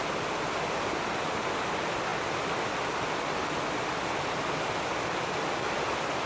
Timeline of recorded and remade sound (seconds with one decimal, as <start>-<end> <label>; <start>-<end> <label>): 0.0-6.3 recorded